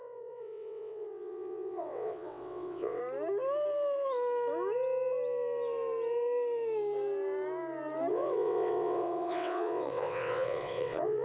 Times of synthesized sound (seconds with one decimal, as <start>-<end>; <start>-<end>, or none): 0.0-3.0; 8.1-11.2